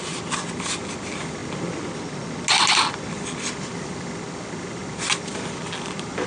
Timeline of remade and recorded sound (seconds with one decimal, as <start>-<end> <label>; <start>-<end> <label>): 0.0-6.3 recorded